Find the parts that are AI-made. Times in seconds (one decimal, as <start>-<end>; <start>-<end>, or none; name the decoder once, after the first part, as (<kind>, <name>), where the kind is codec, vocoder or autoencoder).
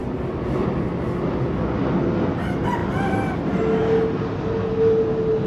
none